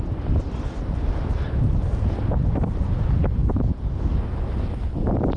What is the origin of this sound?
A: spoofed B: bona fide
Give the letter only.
B